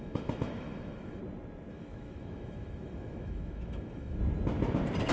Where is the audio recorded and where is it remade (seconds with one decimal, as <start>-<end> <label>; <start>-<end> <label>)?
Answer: 0.0-1.2 remade; 1.2-1.7 recorded; 1.7-4.2 remade; 4.2-5.1 recorded